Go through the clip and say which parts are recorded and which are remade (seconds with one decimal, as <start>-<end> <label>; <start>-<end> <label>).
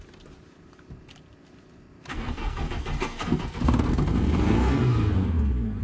0.0-2.1 recorded; 2.1-5.8 remade